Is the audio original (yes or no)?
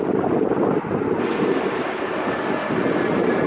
yes